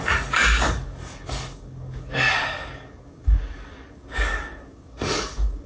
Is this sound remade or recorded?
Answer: remade